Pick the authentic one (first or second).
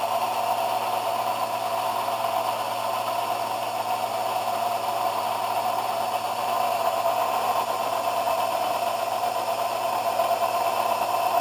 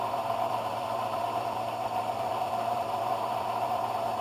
first